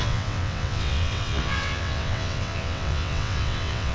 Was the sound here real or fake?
fake